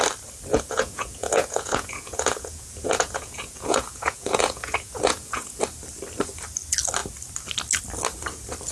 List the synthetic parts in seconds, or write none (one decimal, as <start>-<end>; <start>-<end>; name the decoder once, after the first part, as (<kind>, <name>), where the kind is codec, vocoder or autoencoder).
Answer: 0.5-5.6 (vocoder, Vocos)